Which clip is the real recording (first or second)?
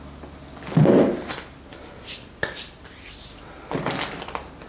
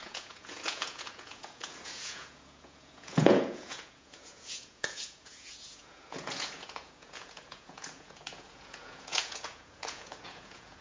first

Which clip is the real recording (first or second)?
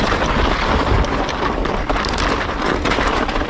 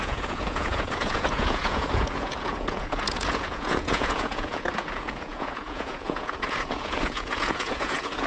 first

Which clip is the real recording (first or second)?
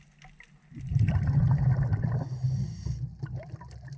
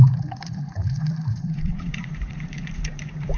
first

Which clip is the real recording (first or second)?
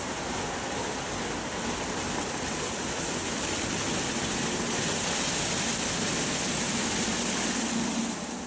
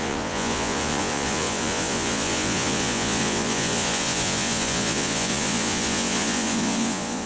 first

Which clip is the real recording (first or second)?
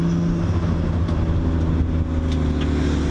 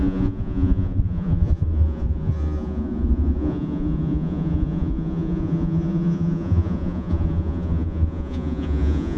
first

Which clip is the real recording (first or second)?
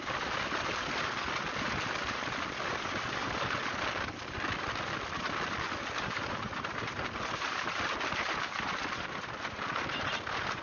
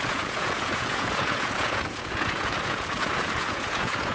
first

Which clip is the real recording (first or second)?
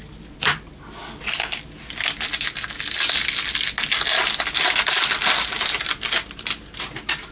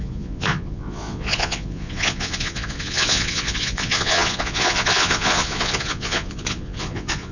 first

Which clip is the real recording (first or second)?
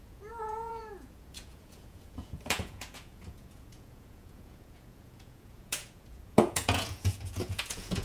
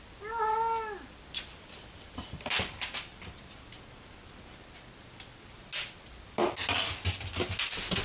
second